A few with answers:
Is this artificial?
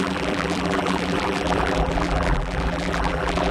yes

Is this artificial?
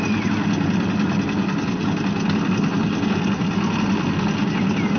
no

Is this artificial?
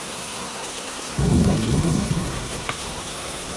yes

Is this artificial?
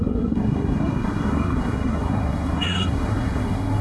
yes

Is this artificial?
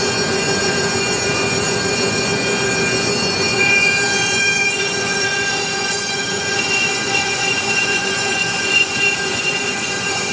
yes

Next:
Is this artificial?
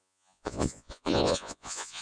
yes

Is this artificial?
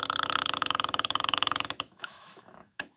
yes